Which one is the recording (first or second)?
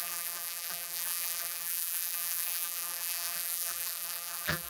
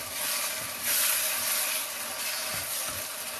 second